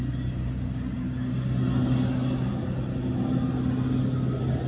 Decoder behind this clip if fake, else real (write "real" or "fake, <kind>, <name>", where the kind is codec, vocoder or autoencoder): real